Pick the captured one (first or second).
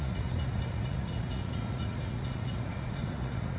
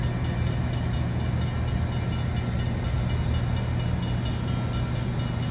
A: second